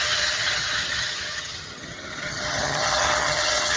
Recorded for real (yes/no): no